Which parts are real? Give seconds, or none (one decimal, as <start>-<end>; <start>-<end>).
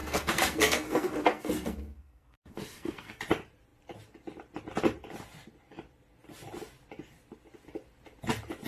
3.2-8.7